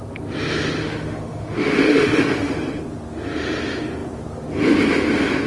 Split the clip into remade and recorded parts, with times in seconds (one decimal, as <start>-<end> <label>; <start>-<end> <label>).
0.0-0.8 recorded; 0.8-2.5 remade; 2.5-5.5 recorded